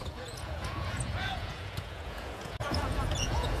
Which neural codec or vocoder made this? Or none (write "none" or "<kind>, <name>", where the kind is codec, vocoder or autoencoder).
vocoder, Vocos